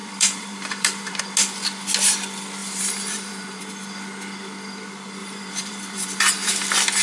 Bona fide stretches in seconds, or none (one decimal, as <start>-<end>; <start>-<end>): 1.2-2.6; 3.6-5.2; 6.5-7.0